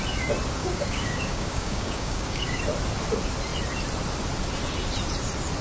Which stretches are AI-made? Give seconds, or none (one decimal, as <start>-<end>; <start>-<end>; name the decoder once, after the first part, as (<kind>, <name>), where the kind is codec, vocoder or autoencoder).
0.6-2.6 (codec, DAC)